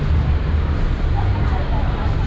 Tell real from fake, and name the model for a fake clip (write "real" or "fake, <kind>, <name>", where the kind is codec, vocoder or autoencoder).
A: real